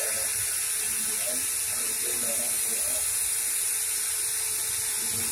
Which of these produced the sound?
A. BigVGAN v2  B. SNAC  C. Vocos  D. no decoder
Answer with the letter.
D